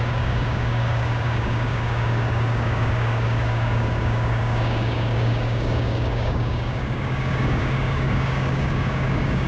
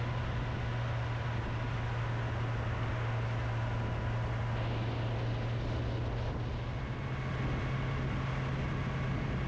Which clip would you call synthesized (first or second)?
first